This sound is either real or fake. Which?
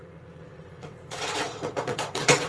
fake